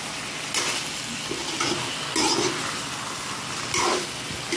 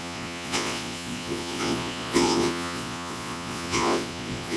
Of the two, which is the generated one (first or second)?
second